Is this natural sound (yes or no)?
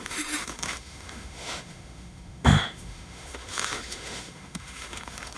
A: no